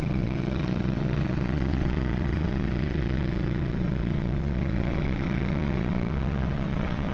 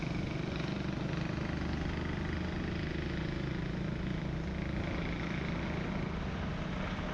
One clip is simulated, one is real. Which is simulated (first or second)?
first